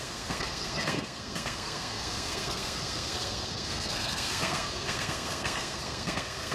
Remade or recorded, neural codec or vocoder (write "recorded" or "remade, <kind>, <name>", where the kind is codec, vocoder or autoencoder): remade, codec, SNAC